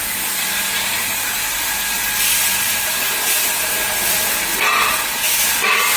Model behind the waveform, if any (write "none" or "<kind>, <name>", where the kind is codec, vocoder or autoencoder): none